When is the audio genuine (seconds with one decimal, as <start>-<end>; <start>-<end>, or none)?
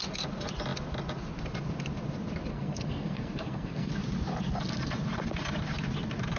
0.0-2.5; 3.9-6.4